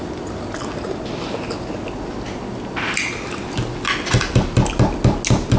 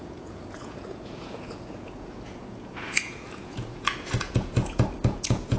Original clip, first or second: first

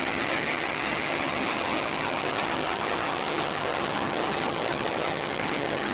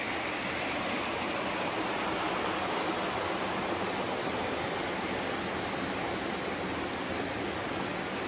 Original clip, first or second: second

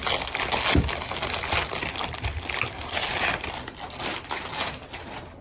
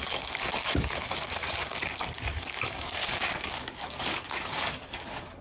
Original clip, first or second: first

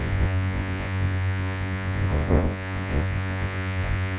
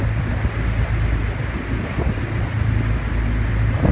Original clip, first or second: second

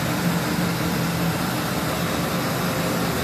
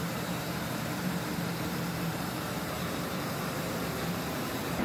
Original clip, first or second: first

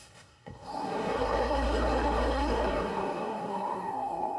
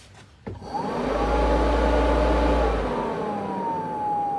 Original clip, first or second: second